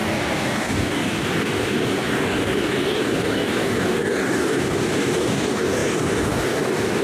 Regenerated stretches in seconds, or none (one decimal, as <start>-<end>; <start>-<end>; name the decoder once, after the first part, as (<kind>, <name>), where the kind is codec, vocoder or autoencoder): 0.0-7.0 (codec, DAC)